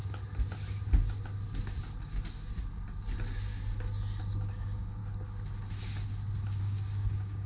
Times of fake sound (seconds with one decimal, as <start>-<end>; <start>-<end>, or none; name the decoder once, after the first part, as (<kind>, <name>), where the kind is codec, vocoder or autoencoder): 4.5-5.0 (codec, DAC); 6.6-7.5